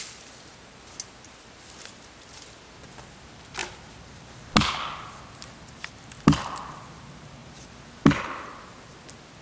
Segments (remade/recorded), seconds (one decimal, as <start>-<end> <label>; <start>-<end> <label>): 0.0-9.4 recorded